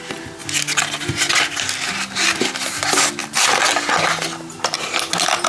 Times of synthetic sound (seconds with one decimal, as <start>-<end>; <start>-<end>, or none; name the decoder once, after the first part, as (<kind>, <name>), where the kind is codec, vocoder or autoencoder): none